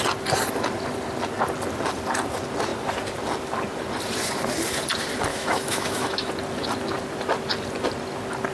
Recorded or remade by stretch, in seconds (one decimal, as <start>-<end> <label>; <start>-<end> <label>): 0.0-5.3 recorded; 5.3-6.3 remade; 6.3-8.5 recorded